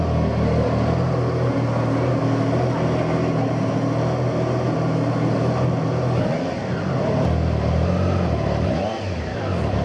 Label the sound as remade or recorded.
recorded